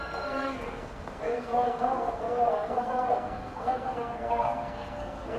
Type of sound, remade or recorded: remade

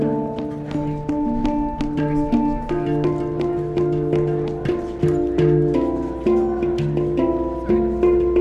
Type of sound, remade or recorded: recorded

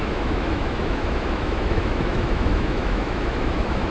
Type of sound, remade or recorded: remade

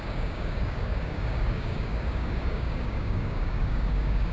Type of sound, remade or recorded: remade